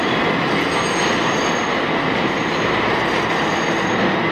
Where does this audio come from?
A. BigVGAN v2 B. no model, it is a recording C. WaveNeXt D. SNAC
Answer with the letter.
B